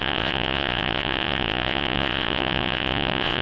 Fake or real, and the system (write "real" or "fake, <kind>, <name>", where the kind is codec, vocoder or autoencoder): fake, vocoder, Vocos